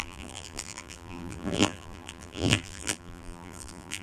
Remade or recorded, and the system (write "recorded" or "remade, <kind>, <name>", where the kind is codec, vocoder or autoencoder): remade, vocoder, BigVGAN v2